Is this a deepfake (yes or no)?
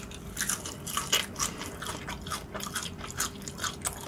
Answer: no